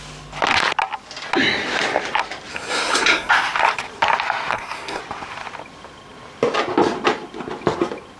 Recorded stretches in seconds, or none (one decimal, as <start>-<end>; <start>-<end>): 0.0-2.5; 3.3-4.5; 5.0-8.2